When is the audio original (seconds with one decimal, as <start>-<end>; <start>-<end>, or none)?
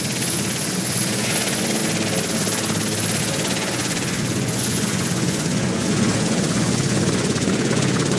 1.8-3.2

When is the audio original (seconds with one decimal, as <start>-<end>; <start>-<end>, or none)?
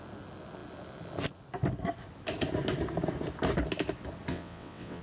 0.0-4.3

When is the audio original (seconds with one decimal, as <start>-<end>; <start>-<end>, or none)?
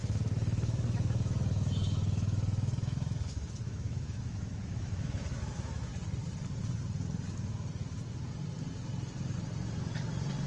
5.9-10.5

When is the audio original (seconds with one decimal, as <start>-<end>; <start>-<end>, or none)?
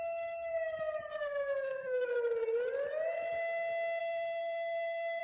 0.0-1.1; 2.1-4.0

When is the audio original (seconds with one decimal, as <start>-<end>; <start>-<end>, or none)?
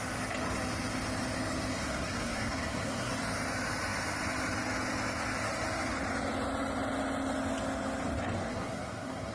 0.0-1.7; 3.1-8.5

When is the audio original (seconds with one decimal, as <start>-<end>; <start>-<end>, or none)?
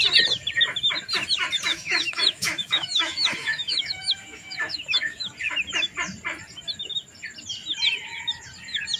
0.0-1.7; 5.3-9.0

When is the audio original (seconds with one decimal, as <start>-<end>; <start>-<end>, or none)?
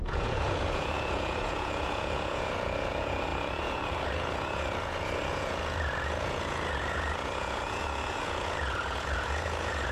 none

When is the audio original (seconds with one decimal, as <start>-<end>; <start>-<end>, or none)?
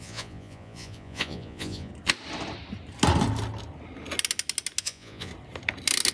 1.9-4.8; 5.3-6.1